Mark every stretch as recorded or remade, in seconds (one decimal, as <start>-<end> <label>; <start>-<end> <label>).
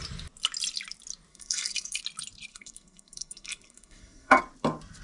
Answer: 0.0-1.3 recorded; 1.3-2.0 remade; 2.0-2.5 recorded; 2.5-4.4 remade; 4.4-5.0 recorded